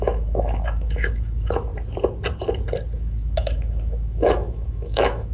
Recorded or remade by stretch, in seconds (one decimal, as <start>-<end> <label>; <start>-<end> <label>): 0.0-1.7 remade; 1.7-2.9 recorded; 2.9-5.3 remade